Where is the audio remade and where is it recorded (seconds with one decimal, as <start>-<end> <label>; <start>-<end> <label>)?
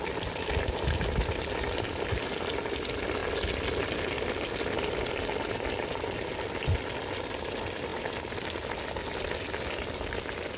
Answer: 0.0-10.6 recorded